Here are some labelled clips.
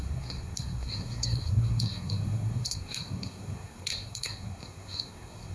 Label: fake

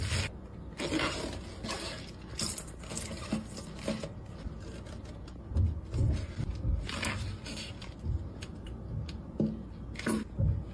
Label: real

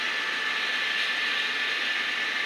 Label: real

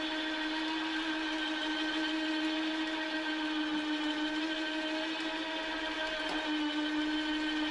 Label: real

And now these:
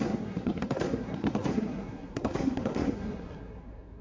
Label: fake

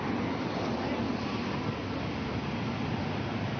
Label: real